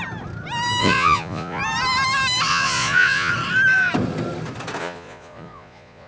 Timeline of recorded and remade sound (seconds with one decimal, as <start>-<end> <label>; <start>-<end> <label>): 0.0-0.8 recorded; 0.8-1.6 remade; 1.6-2.5 recorded; 2.5-3.3 remade; 3.3-4.8 recorded; 4.8-6.1 remade